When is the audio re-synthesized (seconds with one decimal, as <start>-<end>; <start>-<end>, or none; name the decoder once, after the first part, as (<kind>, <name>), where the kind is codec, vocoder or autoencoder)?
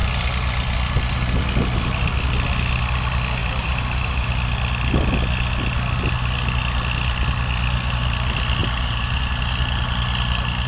3.4-4.3 (vocoder, BigVGAN v2); 8.6-9.3